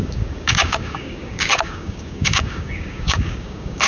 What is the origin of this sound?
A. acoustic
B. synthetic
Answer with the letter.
B